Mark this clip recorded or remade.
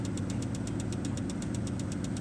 recorded